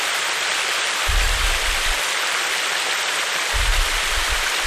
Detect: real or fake real